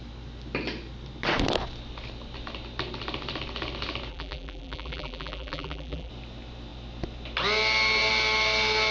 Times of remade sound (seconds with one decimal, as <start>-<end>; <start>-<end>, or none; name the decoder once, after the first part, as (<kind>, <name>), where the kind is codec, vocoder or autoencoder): 4.1-6.1 (vocoder, BigVGAN v2)